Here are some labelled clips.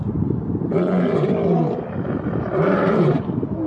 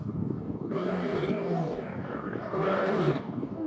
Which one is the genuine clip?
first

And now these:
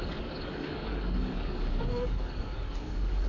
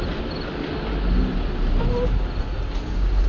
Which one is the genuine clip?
second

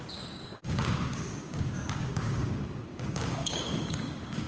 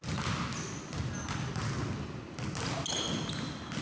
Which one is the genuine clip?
second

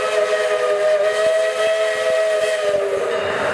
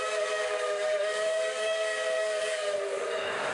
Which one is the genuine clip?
first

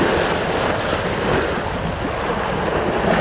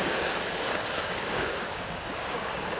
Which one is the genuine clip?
first